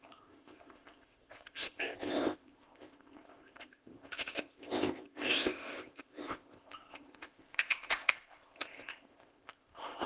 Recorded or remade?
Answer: remade